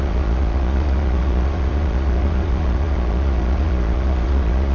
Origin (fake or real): fake